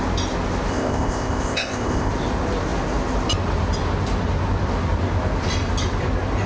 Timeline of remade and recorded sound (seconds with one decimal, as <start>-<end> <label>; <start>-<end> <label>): 0.0-0.7 recorded; 0.7-2.1 remade; 2.1-6.5 recorded